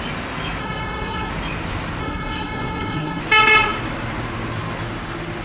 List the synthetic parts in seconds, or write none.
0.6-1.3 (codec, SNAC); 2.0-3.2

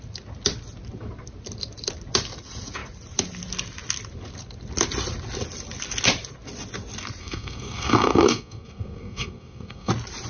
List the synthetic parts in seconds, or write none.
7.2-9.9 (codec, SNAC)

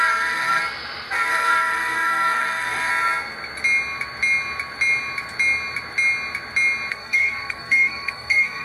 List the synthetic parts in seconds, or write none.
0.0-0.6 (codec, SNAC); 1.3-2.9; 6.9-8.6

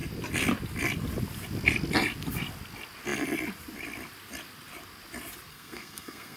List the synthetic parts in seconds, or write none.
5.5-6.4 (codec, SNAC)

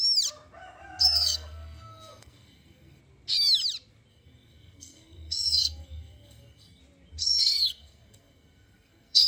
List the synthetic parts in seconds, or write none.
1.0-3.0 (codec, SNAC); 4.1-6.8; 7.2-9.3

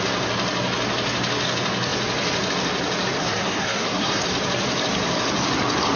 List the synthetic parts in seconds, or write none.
3.2-4.2 (codec, SNAC)

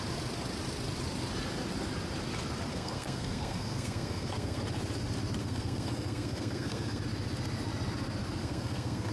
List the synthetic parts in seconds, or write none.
2.7-4.6 (codec, SNAC); 5.4-7.0; 8.4-9.1

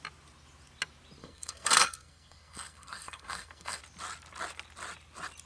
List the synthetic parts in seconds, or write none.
1.2-3.8 (codec, SNAC)